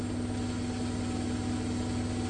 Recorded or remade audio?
recorded